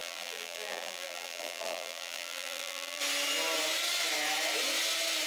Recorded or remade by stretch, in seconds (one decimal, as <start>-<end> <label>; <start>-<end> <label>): 0.0-3.0 remade; 3.0-5.3 recorded